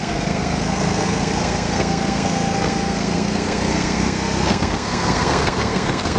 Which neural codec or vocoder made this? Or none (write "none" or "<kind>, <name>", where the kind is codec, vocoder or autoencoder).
codec, SNAC